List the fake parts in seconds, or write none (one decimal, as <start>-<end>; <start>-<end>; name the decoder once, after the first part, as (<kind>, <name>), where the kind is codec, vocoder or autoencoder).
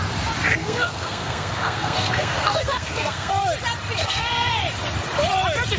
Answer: 0.6-3.3 (codec, SNAC); 4.0-4.5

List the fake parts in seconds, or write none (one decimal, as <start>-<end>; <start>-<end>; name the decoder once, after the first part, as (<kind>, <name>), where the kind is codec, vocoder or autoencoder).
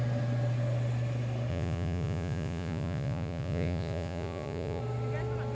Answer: 1.5-4.8 (vocoder, Vocos)